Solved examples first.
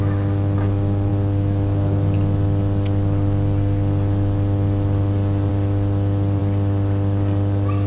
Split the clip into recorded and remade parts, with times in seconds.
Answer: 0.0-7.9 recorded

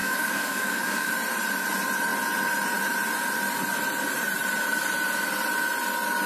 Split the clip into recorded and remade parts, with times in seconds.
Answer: 0.0-1.1 remade; 1.1-6.3 recorded

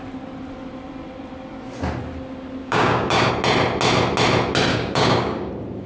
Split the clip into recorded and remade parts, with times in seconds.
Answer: 0.0-2.6 recorded; 2.6-3.3 remade; 3.3-4.7 recorded; 4.7-5.5 remade; 5.5-5.9 recorded

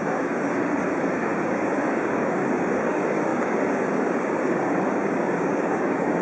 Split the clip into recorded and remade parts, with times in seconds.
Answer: 0.0-6.2 remade

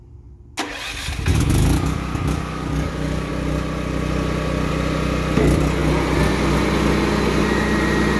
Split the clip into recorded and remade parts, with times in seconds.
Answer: 0.0-1.3 recorded; 1.3-3.3 remade; 3.3-8.2 recorded